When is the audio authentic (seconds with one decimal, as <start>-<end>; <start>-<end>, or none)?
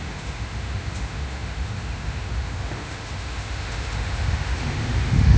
none